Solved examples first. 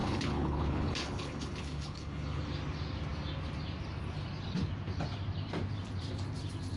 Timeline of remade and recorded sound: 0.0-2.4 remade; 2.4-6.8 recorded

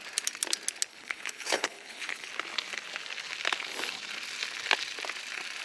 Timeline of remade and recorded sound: 0.0-0.9 recorded; 0.9-2.3 remade; 2.3-5.6 recorded